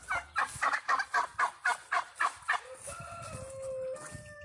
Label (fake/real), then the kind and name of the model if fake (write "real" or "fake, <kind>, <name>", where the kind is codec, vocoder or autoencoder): real